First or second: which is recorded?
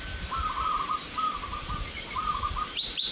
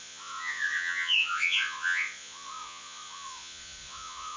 first